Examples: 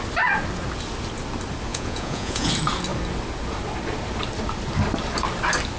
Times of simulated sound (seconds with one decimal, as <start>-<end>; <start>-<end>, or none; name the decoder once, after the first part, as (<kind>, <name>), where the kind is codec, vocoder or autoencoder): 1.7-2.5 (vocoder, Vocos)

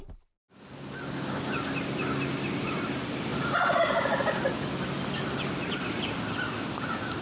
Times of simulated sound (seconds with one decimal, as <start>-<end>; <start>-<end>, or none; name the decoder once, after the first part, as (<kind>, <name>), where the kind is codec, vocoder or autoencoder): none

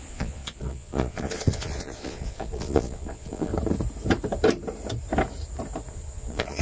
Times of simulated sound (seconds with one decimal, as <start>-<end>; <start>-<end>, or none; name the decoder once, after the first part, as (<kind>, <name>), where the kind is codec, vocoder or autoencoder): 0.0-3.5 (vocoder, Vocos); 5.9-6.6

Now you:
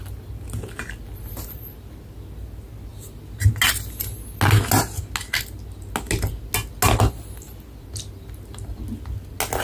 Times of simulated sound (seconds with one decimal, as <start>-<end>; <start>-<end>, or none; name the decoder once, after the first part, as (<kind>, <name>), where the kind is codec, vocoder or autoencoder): none

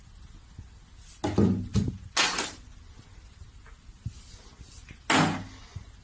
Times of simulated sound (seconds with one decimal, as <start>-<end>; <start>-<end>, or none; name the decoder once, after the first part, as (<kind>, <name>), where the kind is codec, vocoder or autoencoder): none

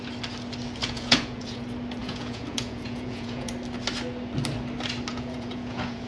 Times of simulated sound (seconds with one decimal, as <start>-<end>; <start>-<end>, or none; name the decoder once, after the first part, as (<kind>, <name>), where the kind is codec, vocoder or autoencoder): 0.8-1.6 (vocoder, Vocos); 2.0-3.5; 5.1-6.1

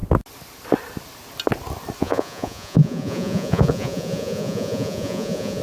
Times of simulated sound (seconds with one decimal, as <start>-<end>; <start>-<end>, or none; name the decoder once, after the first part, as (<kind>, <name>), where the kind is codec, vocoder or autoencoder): 2.0-5.6 (vocoder, Vocos)